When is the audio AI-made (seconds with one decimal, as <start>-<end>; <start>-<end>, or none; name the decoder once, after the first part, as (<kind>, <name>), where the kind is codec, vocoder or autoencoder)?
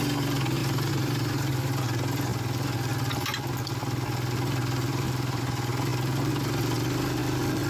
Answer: 0.6-1.7 (vocoder, BigVGAN v2); 4.9-5.4